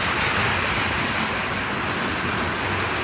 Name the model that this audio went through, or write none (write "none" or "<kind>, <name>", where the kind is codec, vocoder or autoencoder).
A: none